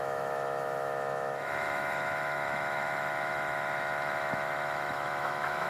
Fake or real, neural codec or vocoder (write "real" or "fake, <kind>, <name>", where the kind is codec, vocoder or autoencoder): fake, autoencoder, DAC-VAE